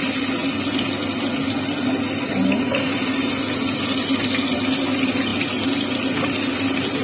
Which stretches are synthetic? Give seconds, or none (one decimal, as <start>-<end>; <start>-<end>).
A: none